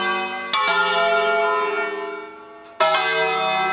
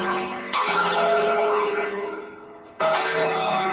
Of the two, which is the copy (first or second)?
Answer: second